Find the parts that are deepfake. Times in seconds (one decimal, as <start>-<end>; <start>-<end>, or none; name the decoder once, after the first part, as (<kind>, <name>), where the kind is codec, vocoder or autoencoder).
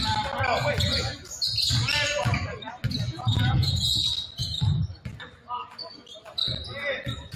3.1-3.9 (vocoder, Vocos)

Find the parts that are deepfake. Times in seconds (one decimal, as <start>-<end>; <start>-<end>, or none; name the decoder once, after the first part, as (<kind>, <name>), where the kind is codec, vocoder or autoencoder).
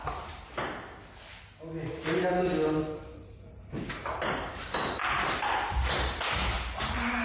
2.8-5.0 (vocoder, BigVGAN v2); 5.7-7.2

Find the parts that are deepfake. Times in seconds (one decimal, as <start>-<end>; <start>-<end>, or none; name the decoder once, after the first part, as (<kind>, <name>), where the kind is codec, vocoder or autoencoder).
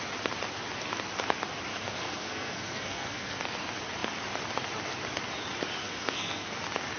1.7-3.4 (codec, SNAC); 5.8-6.6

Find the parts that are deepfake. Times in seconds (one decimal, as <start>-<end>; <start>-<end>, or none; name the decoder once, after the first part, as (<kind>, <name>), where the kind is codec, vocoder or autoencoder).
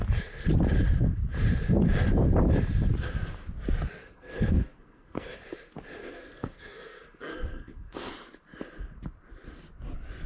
4.0-5.4 (codec, SNAC); 6.0-8.1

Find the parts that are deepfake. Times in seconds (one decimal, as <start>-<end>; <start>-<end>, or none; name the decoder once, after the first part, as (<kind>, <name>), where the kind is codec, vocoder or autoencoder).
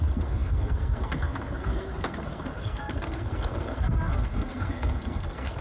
0.0-5.6 (codec, SNAC)